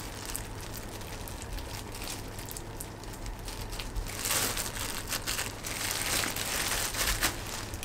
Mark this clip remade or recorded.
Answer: recorded